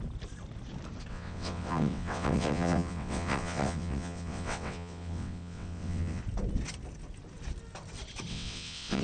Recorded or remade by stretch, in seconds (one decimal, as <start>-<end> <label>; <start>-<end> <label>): 0.0-1.1 recorded; 1.1-6.2 remade; 6.2-8.3 recorded; 8.3-9.0 remade